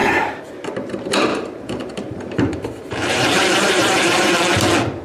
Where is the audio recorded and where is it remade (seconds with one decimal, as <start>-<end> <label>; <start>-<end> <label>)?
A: 0.0-0.5 remade; 0.5-1.3 recorded; 1.3-4.3 remade; 4.3-5.0 recorded